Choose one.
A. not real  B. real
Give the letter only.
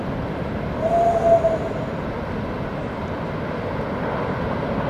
B